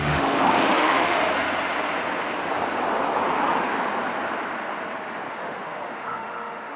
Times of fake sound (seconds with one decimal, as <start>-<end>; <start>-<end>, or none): 0.0-1.2; 5.3-6.8

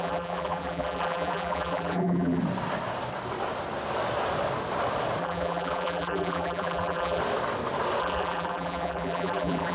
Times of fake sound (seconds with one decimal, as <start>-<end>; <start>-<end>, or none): 0.0-2.4; 5.2-7.2; 8.0-9.7

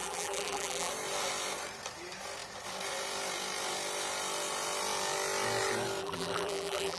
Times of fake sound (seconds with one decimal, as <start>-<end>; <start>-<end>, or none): 0.0-0.9; 6.0-7.0

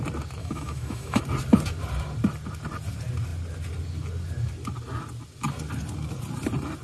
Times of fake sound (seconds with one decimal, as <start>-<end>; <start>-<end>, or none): 0.4-1.2

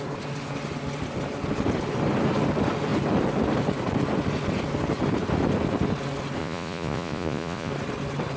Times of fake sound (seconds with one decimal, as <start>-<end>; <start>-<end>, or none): 6.4-7.7

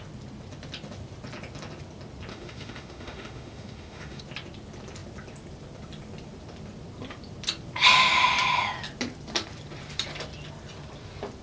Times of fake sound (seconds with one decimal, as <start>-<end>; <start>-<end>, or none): 2.3-4.2